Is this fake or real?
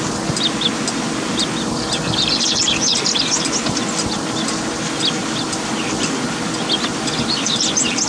real